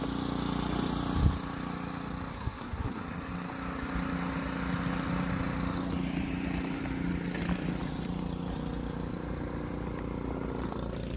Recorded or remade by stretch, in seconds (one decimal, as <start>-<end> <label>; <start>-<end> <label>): 0.0-2.3 recorded; 2.3-3.0 remade; 3.0-11.2 recorded